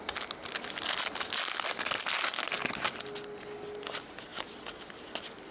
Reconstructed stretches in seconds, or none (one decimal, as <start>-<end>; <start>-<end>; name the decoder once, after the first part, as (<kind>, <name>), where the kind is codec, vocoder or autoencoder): none